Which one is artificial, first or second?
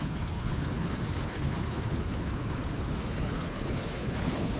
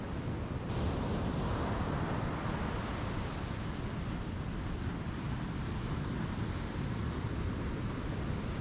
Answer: first